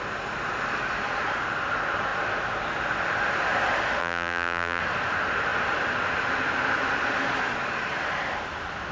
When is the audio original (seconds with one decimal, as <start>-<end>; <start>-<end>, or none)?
0.0-4.0; 4.8-8.9

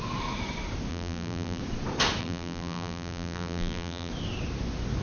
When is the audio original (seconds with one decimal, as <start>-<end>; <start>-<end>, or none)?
0.0-0.9; 1.6-2.2; 4.1-5.0

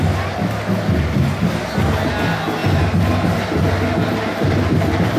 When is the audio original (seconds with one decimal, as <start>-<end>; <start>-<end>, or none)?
0.0-4.3

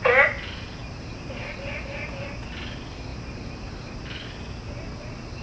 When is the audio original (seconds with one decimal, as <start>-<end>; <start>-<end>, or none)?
0.0-3.1; 4.0-5.4

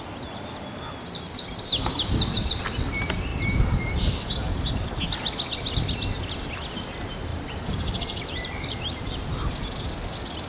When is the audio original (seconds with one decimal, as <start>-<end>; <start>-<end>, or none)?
0.0-3.3; 5.0-7.3; 9.0-10.5

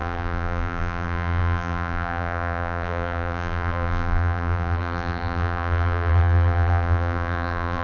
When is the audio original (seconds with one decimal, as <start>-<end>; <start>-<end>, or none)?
none

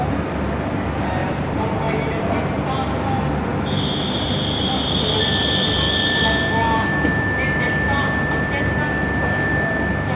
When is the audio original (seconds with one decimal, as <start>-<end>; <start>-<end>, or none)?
0.0-1.2; 1.8-10.2

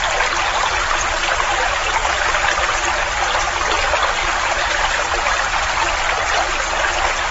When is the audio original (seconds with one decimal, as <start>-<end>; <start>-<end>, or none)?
0.0-0.8; 1.5-2.0; 2.9-4.2; 5.8-7.3